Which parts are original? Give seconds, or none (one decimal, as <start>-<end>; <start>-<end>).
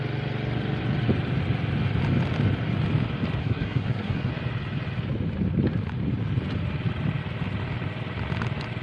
0.0-3.4; 4.3-8.8